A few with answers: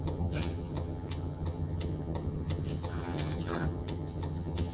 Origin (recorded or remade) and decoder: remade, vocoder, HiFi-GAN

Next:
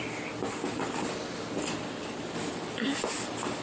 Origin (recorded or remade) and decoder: recorded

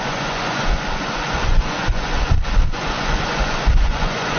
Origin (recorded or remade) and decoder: remade, vocoder, Vocos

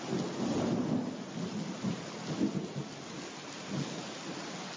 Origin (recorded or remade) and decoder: recorded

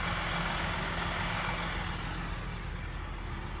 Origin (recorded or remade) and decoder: recorded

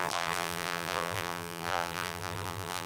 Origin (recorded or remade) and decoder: remade, vocoder, BigVGAN v2